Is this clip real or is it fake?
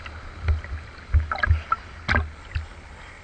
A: real